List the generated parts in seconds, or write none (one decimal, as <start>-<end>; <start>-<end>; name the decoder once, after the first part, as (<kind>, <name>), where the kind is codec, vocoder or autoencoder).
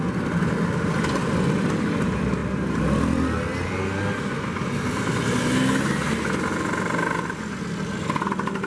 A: none